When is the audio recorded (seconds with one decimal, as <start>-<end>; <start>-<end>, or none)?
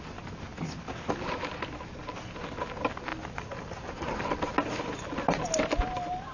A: 0.0-3.1; 4.5-6.3